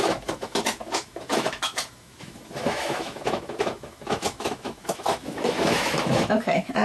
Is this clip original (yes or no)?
no